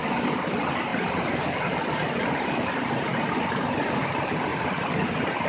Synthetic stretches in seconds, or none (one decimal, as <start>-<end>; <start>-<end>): 0.9-3.9; 4.5-5.5